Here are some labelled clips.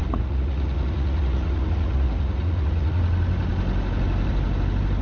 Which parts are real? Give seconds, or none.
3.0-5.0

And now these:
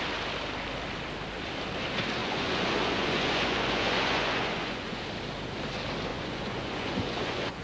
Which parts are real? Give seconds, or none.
0.0-2.2; 5.0-6.1

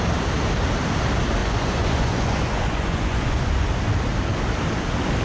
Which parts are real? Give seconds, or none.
0.0-1.4; 3.7-5.2

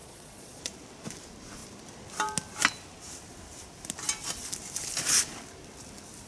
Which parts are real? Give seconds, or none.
0.6-6.3